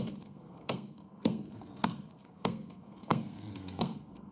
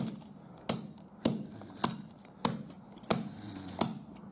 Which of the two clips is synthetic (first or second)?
first